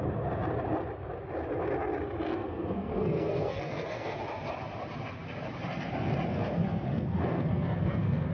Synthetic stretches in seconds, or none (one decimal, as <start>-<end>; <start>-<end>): 2.3-4.2; 6.3-8.3